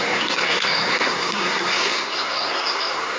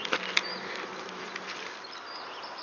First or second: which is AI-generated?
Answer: first